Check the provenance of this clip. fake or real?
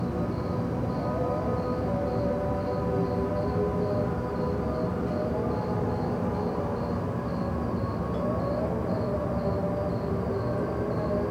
real